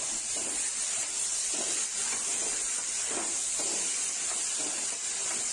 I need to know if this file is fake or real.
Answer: fake